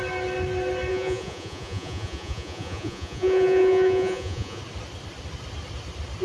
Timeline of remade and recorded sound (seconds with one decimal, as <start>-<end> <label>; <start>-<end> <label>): 0.0-0.9 recorded; 0.9-4.6 remade; 4.6-6.2 recorded